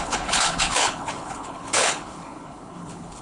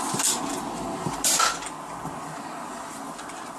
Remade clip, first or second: first